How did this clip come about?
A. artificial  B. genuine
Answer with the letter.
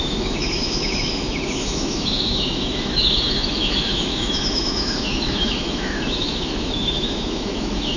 A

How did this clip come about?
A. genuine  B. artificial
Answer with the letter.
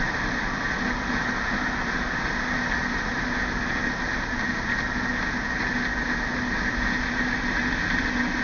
A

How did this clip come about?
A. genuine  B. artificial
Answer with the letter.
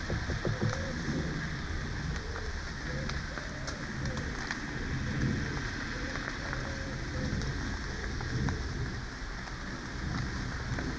A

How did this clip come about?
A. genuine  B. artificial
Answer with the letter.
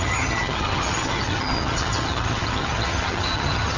B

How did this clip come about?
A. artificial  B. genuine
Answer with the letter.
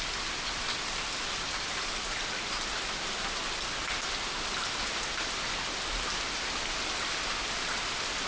A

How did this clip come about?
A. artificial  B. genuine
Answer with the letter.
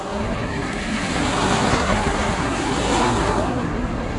A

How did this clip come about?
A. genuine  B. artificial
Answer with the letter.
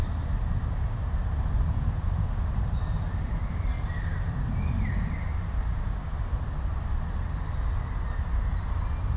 A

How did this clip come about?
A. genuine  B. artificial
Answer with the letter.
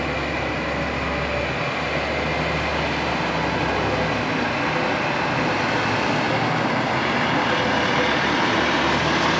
A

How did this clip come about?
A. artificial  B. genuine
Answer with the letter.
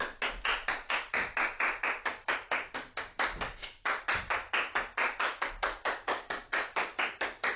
B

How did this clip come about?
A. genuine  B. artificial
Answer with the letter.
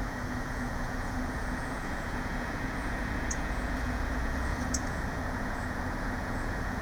B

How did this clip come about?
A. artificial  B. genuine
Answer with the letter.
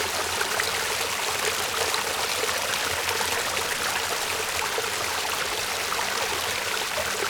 B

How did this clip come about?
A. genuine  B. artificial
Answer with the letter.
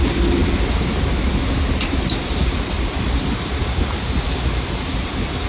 A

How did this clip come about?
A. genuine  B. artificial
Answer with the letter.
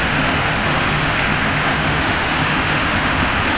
B